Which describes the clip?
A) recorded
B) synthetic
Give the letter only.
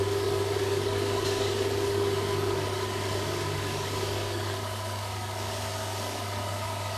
B